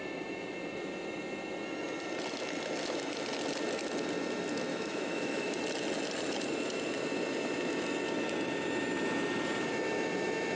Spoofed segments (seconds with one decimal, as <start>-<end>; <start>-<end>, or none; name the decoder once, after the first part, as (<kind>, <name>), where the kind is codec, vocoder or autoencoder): 4.7-5.6 (autoencoder, DAC-VAE)